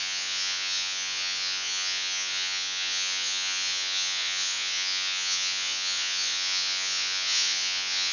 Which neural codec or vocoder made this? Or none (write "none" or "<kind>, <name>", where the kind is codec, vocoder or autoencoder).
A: vocoder, Vocos